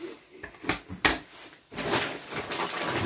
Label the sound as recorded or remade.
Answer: recorded